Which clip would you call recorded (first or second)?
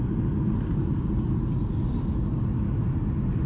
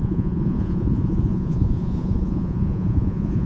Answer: first